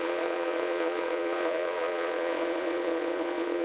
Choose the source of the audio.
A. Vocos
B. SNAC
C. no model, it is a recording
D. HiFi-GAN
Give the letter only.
A